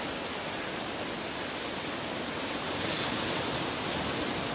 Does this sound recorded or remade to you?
recorded